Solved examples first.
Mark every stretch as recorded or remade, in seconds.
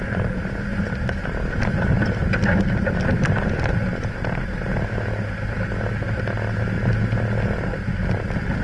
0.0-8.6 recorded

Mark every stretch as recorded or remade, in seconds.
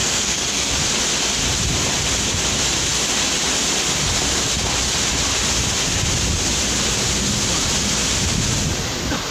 0.0-0.7 remade; 0.7-9.3 recorded